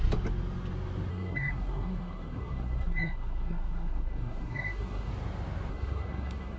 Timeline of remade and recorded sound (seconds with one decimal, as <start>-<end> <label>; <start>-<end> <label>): 0.0-1.1 recorded; 1.1-5.1 remade; 5.1-5.7 recorded; 5.7-6.6 remade